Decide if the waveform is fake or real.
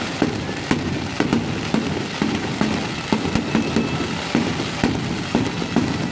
real